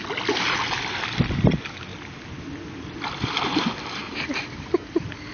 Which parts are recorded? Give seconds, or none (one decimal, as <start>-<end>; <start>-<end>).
0.0-5.3